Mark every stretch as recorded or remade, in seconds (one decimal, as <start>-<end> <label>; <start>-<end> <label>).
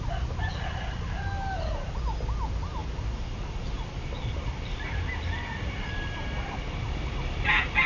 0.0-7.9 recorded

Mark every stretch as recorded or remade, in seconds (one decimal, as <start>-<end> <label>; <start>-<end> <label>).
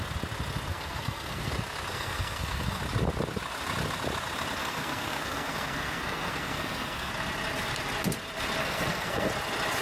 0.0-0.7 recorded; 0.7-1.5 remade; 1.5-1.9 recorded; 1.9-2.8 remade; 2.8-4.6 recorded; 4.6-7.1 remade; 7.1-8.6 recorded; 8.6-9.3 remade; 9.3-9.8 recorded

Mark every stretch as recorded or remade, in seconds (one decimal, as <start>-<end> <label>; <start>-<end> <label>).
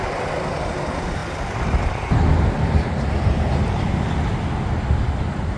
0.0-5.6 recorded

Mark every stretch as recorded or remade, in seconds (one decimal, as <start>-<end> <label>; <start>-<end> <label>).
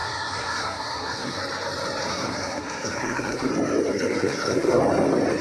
0.0-1.4 remade; 1.4-2.1 recorded; 2.1-3.5 remade; 3.5-3.9 recorded; 3.9-4.8 remade; 4.8-5.4 recorded